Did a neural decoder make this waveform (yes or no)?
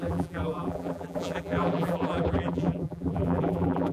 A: yes